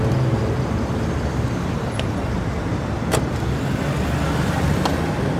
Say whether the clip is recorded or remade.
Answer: recorded